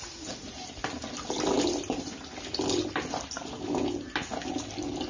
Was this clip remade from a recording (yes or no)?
no